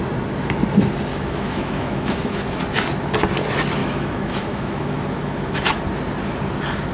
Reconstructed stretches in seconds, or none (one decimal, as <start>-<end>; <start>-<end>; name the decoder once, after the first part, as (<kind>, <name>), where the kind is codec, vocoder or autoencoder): 1.1-2.6 (autoencoder, DAC-VAE); 3.8-5.8